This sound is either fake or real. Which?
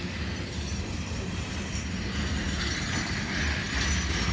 real